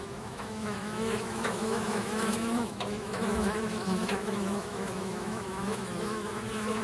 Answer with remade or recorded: remade